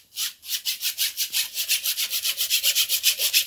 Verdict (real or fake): real